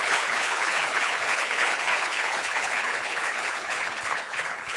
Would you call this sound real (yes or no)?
no